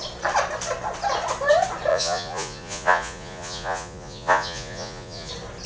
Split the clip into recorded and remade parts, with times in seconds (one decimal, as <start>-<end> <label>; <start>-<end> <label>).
0.0-1.9 recorded; 1.9-5.3 remade; 5.3-5.7 recorded